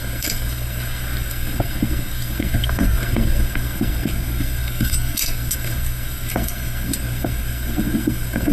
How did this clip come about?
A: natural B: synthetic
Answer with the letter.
B